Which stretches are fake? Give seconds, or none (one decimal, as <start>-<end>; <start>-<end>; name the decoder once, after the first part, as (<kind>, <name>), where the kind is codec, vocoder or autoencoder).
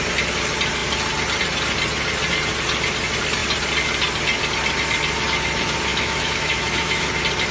5.9-7.1 (autoencoder, DAC-VAE)